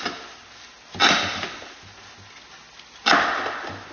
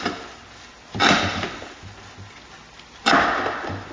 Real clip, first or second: first